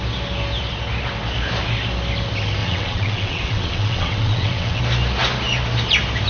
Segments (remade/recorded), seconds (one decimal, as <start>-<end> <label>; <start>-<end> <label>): 0.0-2.6 recorded; 2.6-4.8 remade; 4.8-6.3 recorded